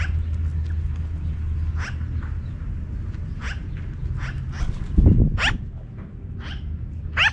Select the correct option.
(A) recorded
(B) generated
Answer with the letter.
A